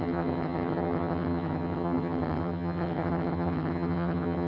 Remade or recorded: remade